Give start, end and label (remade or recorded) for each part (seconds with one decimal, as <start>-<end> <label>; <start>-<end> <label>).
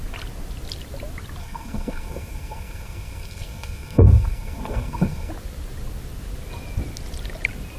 0.0-1.4 recorded; 1.4-5.3 remade; 5.3-7.8 recorded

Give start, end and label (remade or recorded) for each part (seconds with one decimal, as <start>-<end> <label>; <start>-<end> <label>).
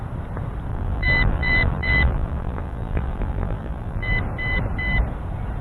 0.0-0.7 recorded; 0.7-4.1 remade; 4.1-5.6 recorded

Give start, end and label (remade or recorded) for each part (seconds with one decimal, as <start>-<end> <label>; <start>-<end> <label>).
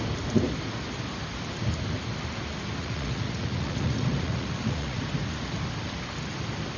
0.0-2.8 recorded; 2.8-5.0 remade; 5.0-6.8 recorded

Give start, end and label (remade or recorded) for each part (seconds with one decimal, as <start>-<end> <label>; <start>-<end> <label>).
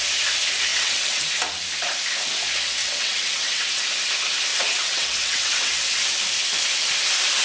0.0-0.7 recorded; 0.7-1.2 remade; 1.2-2.8 recorded; 2.8-3.8 remade; 3.8-4.5 recorded; 4.5-5.8 remade; 5.8-7.4 recorded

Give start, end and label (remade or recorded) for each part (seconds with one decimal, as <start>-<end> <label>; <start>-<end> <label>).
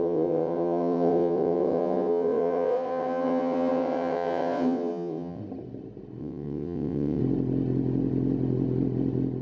0.0-5.4 remade; 5.4-6.2 recorded; 6.2-7.2 remade; 7.2-9.4 recorded